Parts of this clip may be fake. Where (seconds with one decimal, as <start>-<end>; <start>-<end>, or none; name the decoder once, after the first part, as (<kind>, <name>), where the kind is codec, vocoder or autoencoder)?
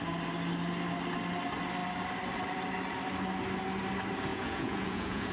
4.3-5.3 (vocoder, Vocos)